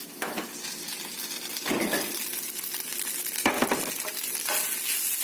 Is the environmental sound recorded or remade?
recorded